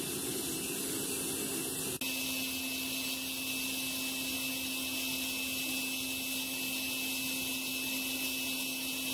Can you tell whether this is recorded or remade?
recorded